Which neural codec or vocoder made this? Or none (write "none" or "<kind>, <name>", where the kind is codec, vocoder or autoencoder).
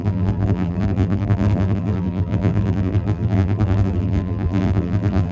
vocoder, BigVGAN v2